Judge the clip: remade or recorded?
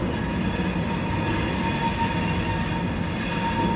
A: recorded